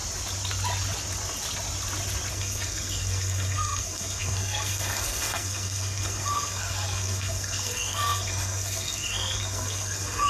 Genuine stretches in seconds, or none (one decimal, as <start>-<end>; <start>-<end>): 0.0-2.3